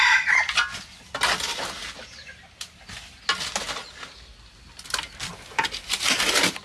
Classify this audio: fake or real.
real